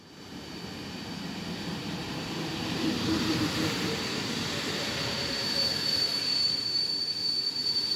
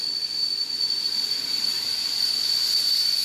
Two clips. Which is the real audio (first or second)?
second